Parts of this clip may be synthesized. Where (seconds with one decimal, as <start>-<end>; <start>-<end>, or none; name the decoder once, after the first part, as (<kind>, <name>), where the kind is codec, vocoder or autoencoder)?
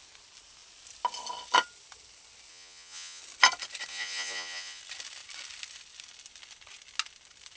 2.5-3.2 (vocoder, Vocos); 3.9-4.8